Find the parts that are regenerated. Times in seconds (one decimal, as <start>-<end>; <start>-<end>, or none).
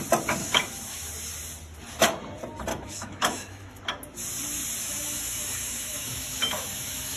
0.4-1.1; 2.7-3.8; 4.8-7.2